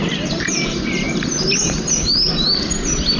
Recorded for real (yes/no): yes